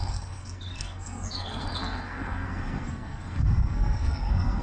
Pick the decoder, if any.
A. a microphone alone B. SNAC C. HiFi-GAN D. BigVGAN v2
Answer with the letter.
B